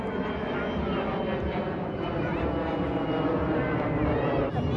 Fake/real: real